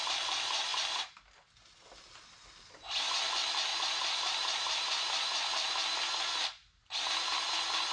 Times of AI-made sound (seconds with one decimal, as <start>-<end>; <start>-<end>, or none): 3.7-6.0